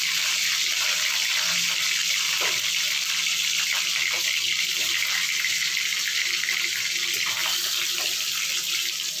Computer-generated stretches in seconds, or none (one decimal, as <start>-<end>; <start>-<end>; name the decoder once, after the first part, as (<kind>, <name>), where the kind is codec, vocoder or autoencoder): 2.0-6.6 (vocoder, BigVGAN v2); 7.4-8.7